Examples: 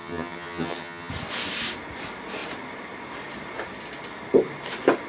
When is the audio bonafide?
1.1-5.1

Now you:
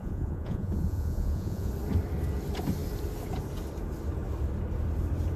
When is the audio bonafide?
1.7-5.4

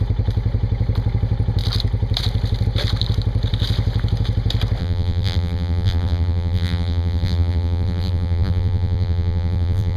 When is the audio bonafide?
0.0-4.8

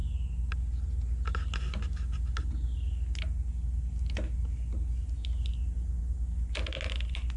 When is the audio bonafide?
0.0-7.4

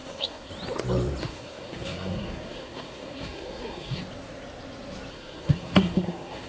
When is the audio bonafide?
0.5-1.2; 4.0-5.1

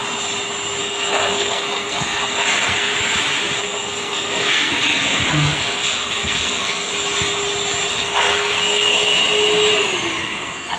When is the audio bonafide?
0.0-0.8; 2.9-3.6; 6.9-7.9; 9.2-10.2

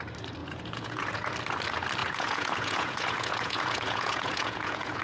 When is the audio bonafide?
0.0-0.4; 1.3-2.0